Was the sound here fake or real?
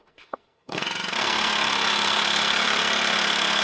fake